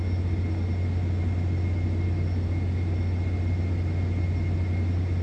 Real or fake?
real